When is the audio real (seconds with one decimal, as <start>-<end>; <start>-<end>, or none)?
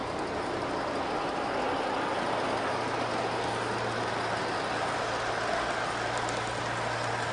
0.0-7.3